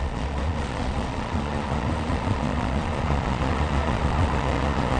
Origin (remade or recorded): remade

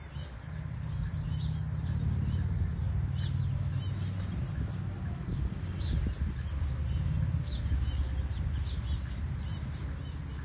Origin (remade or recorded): recorded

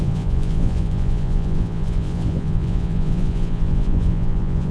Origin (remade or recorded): remade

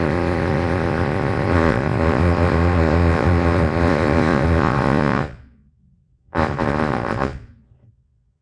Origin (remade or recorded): remade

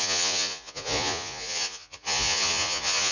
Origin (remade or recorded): remade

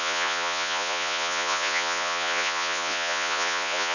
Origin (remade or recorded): remade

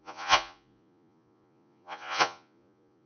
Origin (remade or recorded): remade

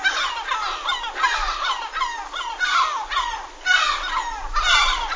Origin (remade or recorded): recorded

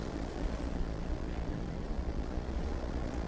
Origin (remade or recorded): remade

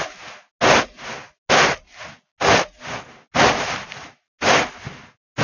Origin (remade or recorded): recorded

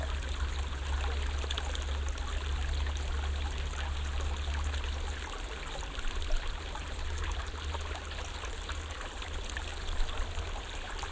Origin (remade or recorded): recorded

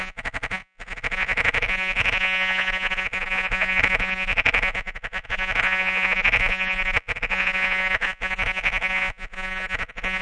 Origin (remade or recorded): remade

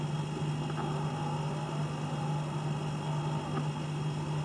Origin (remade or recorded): recorded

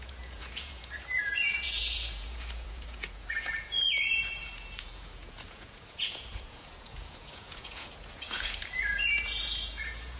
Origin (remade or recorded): remade